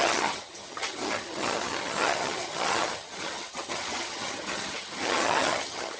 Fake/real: fake